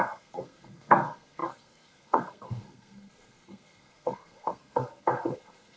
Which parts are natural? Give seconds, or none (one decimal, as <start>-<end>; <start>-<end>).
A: none